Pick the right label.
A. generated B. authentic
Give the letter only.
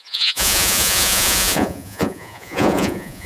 A